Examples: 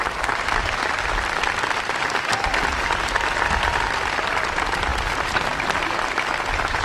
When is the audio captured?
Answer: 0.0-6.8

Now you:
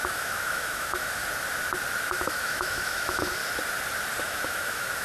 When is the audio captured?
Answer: 1.2-2.0; 3.4-4.2

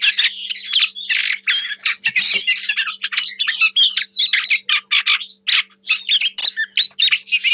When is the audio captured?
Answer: 0.0-7.5

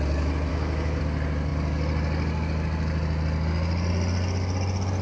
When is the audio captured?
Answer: 0.0-0.5; 1.0-5.0

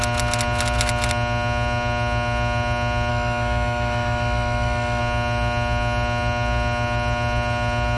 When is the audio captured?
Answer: 0.0-3.1; 5.0-8.0

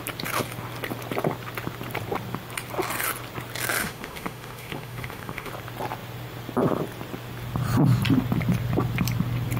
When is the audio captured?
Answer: 0.0-3.8; 5.5-9.6

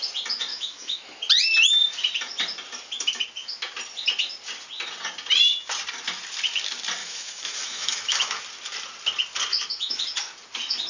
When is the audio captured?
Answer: 0.0-0.5; 1.2-7.0; 8.4-9.5; 10.0-10.9

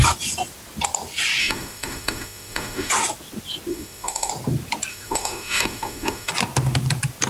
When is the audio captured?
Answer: 0.0-1.4; 2.9-3.7; 4.3-4.9; 6.3-7.3